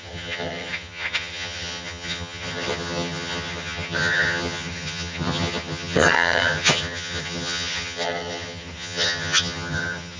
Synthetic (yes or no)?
yes